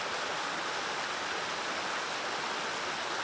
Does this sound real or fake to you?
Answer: real